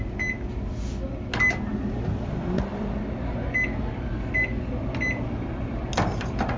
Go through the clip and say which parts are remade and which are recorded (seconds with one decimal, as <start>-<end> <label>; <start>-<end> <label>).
0.0-6.6 recorded